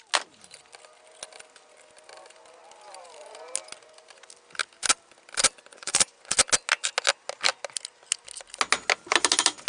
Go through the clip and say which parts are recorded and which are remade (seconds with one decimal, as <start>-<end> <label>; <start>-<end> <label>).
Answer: 0.0-5.7 recorded; 5.7-6.3 remade; 6.3-9.7 recorded